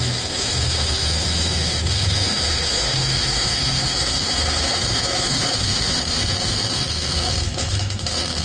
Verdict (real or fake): fake